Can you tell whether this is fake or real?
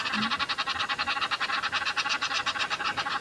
real